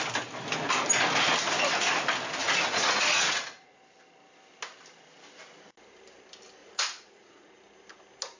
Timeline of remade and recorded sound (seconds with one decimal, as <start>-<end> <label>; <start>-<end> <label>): 0.0-2.4 recorded; 2.4-3.8 remade; 3.8-6.6 recorded; 6.6-7.5 remade; 7.5-8.4 recorded